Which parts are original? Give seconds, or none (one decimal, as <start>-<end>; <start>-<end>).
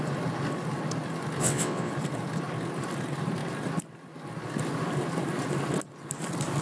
0.0-1.4; 1.9-6.6